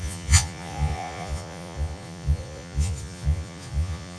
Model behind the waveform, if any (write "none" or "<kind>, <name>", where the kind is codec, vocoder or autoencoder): vocoder, Vocos